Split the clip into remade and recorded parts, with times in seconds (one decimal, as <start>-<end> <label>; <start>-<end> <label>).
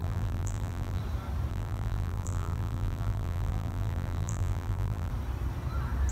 0.0-1.0 remade; 1.0-1.5 recorded; 1.5-5.1 remade; 5.1-6.1 recorded